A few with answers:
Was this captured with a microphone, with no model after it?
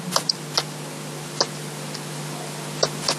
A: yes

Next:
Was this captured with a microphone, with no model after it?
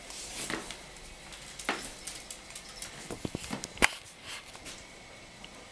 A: yes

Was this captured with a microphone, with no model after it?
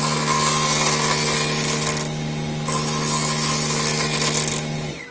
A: yes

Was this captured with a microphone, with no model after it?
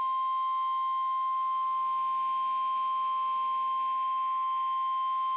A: no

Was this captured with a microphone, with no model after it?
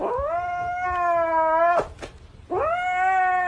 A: yes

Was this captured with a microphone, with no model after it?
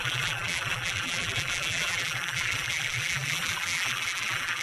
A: no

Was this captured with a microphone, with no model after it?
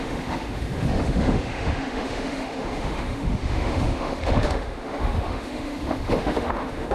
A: no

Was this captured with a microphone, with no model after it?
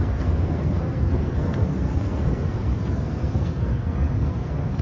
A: no